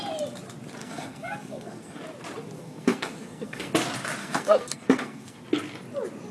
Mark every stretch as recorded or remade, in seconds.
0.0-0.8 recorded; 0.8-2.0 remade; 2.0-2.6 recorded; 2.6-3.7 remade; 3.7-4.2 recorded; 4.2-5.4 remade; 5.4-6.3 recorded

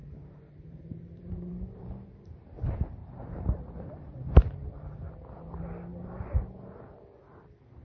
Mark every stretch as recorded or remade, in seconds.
0.0-1.9 remade; 1.9-3.0 recorded; 3.0-5.1 remade; 5.1-5.9 recorded; 5.9-6.4 remade; 6.4-7.8 recorded

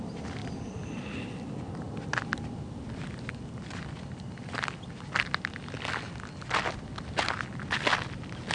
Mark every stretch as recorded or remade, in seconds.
0.0-8.5 recorded